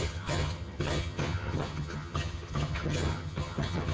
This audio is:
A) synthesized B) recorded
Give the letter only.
A